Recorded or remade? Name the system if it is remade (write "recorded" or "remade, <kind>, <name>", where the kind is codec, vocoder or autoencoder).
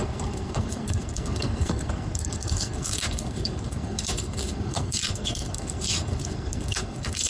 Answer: remade, codec, SNAC